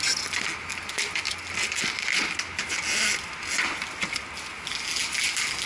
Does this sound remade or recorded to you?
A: recorded